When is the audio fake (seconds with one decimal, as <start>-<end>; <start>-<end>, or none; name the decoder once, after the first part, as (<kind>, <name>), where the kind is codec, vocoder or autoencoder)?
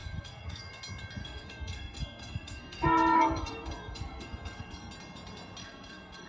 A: 0.0-0.7 (codec, SNAC); 1.2-4.9; 5.6-6.3